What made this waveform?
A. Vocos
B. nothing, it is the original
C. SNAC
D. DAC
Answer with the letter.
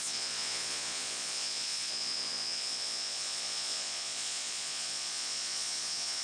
A